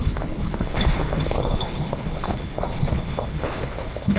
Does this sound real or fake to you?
fake